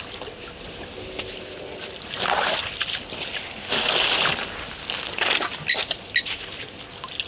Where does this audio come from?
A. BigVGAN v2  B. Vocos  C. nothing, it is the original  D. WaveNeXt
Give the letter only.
C